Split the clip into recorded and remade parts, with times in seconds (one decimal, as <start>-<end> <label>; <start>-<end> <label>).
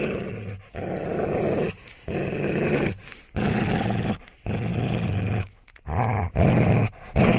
0.0-7.4 recorded